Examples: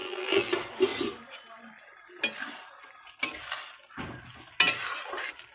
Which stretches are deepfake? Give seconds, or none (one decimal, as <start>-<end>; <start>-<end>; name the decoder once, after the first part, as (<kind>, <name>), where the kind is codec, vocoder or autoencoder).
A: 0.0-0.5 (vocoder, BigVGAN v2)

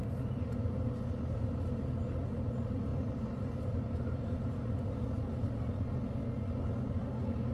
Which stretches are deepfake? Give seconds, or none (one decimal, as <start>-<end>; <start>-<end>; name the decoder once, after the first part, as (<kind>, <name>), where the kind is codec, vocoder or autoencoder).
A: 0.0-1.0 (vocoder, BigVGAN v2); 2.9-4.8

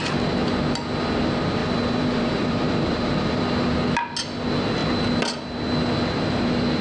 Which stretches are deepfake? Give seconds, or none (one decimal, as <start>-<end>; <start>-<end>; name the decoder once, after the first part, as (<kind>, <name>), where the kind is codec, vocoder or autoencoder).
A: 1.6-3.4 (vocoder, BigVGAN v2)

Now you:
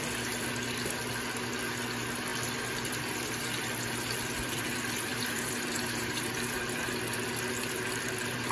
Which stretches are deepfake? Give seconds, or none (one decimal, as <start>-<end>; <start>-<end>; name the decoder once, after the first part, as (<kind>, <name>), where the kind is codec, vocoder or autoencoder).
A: 5.1-6.6 (vocoder, BigVGAN v2)

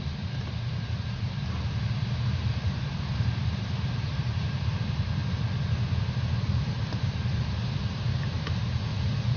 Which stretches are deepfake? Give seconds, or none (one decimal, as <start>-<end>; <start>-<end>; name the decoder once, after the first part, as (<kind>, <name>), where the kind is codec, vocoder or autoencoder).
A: 0.0-9.4 (vocoder, BigVGAN v2)

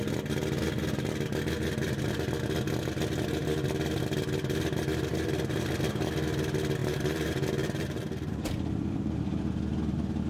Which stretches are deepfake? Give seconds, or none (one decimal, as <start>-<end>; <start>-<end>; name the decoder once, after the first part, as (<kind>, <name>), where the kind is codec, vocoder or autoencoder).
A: 5.1-5.7 (vocoder, BigVGAN v2); 6.8-9.4